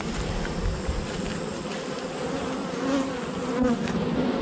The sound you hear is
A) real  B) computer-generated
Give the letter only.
A